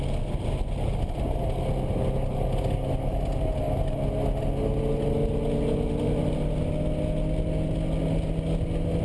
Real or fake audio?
real